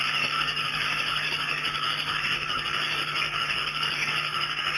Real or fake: fake